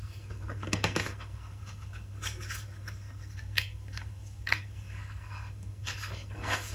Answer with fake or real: fake